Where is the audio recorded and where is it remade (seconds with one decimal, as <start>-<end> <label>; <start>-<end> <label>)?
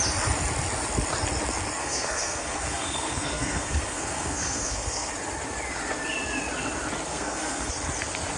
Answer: 0.0-1.8 recorded; 1.8-5.1 remade; 5.1-7.1 recorded; 7.1-7.7 remade; 7.7-8.4 recorded